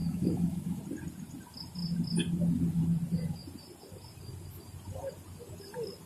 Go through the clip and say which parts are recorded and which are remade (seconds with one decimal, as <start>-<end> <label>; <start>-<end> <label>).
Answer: 0.0-0.8 remade; 0.8-6.1 recorded